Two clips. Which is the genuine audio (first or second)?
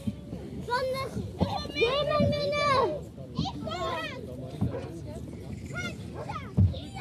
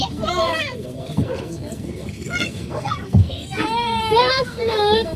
first